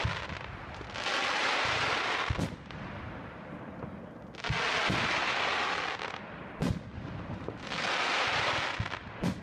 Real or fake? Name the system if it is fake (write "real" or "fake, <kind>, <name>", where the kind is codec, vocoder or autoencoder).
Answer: real